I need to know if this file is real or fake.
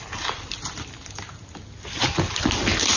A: real